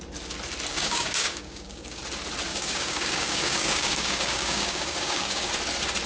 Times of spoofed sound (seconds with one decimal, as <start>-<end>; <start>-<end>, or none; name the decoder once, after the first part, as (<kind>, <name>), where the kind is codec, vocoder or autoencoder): 0.7-2.0 (codec, DAC); 2.5-5.5